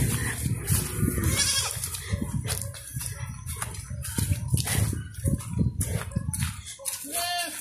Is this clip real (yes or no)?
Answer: yes